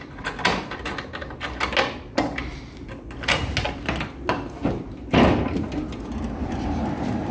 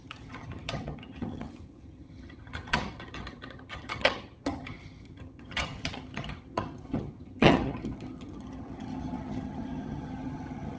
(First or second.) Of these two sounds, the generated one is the second